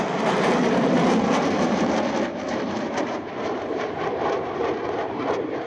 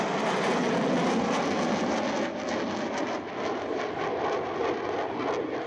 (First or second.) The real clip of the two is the second